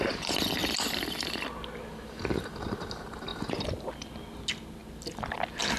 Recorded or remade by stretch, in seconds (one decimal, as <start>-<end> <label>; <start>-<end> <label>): 0.0-0.6 recorded; 0.6-1.4 remade; 1.4-3.3 recorded; 3.3-4.1 remade; 4.1-5.8 recorded

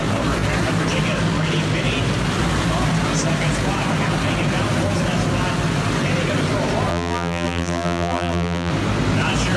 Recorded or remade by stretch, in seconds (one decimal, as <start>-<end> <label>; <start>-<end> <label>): 0.0-6.9 recorded; 6.9-8.7 remade; 8.7-9.6 recorded

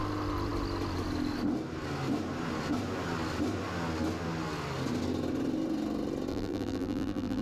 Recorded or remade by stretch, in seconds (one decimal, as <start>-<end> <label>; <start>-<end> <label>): 0.0-6.3 recorded; 6.3-7.4 remade

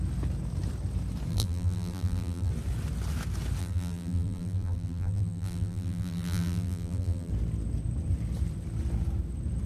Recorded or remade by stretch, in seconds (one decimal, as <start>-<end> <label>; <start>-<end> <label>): 0.0-1.3 recorded; 1.3-2.5 remade; 2.5-3.6 recorded; 3.6-7.3 remade; 7.3-9.7 recorded

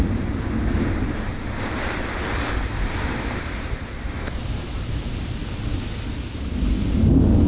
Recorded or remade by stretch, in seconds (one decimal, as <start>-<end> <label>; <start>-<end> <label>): 0.0-0.7 recorded; 0.7-5.2 remade; 5.2-7.5 recorded